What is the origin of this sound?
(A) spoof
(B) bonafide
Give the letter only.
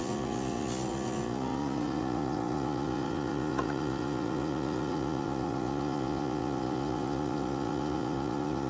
A